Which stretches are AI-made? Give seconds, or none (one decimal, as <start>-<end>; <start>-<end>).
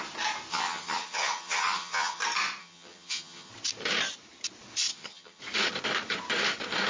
0.5-2.2; 2.6-3.5; 4.9-5.4